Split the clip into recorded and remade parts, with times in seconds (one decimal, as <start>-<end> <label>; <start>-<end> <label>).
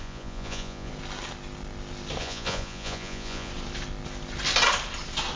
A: 0.0-0.9 remade; 0.9-2.2 recorded; 2.2-3.5 remade; 3.5-5.4 recorded